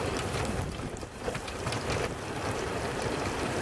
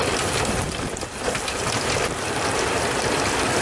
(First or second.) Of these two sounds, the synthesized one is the first